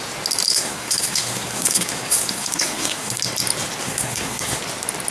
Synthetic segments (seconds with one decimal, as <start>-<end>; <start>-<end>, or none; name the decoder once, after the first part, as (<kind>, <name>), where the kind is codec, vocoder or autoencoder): 0.5-3.2 (codec, SNAC); 3.8-4.6